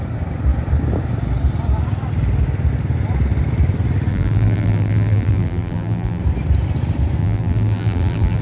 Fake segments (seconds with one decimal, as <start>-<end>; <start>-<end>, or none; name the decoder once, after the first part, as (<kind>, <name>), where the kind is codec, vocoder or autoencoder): 4.1-6.2 (vocoder, BigVGAN v2); 7.2-8.4